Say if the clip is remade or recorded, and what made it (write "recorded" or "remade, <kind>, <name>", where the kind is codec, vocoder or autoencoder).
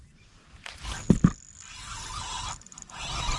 recorded